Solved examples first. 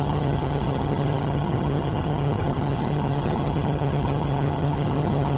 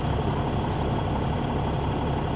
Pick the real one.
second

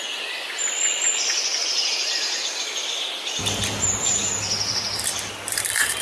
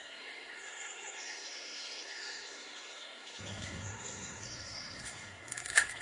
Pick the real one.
first